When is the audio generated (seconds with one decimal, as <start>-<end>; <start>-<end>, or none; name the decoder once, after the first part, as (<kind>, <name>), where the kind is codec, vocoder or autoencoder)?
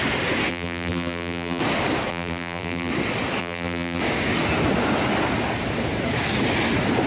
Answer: 0.5-1.6 (vocoder, BigVGAN v2); 2.1-2.9; 3.4-4.0